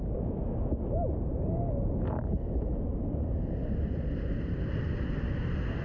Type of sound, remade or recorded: recorded